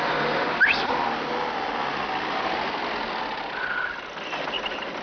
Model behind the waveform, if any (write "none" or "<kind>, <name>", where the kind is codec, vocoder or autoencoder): none